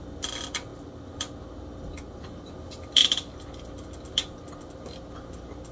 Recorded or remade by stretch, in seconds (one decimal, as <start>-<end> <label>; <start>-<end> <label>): 0.0-5.7 recorded